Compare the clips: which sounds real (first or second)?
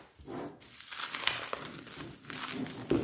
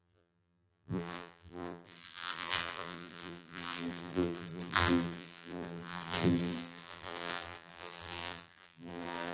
first